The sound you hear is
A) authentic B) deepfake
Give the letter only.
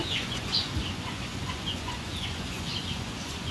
B